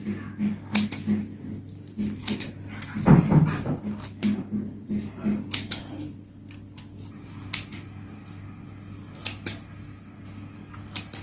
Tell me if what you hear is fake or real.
real